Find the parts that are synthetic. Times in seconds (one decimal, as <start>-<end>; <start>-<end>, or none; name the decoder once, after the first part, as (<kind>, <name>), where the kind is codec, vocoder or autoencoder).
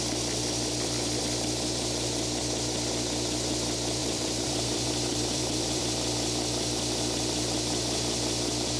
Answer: 4.0-5.8 (vocoder, BigVGAN v2)